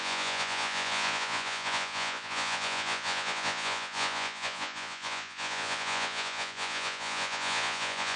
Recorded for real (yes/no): no